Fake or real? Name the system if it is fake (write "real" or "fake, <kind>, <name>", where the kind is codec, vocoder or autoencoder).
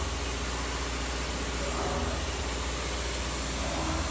real